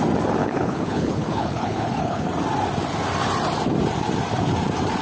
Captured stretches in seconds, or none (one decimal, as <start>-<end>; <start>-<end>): 0.0-0.4; 2.3-5.0